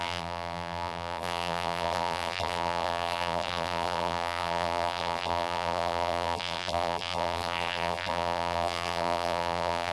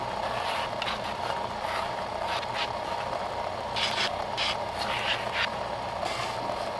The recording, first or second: second